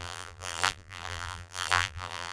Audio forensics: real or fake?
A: fake